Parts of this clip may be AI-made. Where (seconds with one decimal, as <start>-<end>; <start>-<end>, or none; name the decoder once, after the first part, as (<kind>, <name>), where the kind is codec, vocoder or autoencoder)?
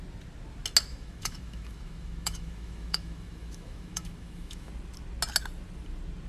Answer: 0.9-4.7 (autoencoder, DAC-VAE)